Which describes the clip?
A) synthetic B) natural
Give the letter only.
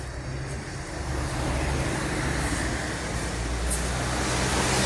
B